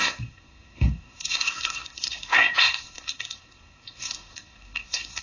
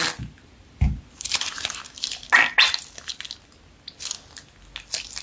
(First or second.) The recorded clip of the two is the second